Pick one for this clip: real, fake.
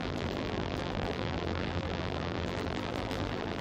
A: fake